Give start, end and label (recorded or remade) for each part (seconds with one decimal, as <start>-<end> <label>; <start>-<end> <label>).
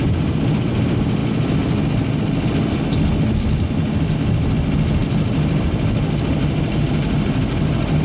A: 0.0-8.0 recorded